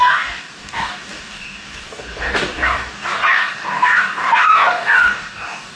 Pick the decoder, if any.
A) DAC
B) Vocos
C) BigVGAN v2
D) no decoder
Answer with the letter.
A